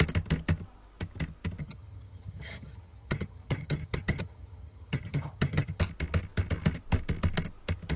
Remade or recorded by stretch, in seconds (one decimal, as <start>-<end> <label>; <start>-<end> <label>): 0.0-1.6 recorded; 1.6-5.8 remade; 5.8-8.0 recorded